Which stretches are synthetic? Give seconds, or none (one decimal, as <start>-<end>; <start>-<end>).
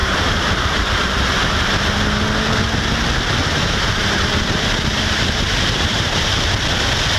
0.0-1.8; 3.4-6.3